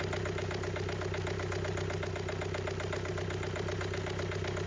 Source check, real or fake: real